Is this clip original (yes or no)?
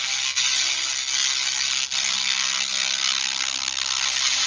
yes